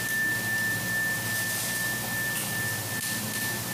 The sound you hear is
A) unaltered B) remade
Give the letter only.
A